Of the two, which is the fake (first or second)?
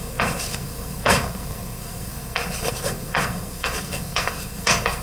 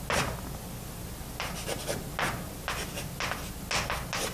first